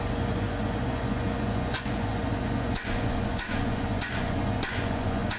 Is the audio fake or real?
fake